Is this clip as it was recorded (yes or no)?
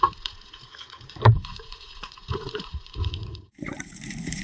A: no